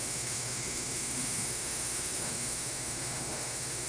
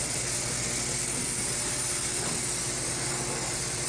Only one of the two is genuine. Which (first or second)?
second